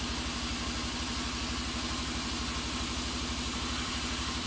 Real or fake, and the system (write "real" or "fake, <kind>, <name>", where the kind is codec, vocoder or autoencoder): real